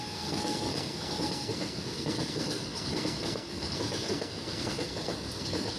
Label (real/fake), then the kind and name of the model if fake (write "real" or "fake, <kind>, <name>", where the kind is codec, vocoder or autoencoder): fake, codec, SNAC